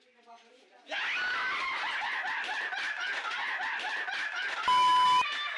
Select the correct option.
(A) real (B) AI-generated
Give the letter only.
A